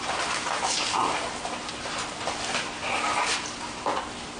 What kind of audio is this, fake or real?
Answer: real